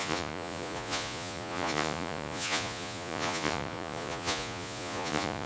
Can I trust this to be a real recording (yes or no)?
no